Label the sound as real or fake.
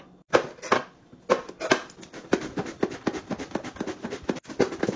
real